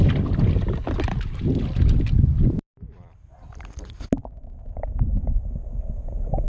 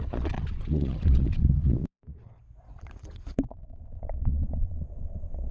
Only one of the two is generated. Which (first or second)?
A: second